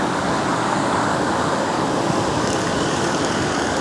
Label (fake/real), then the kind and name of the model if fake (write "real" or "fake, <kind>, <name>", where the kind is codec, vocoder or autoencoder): fake, codec, DAC